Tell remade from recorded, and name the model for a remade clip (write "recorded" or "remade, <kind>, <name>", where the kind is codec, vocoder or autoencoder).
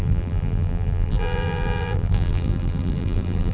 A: remade, vocoder, BigVGAN v2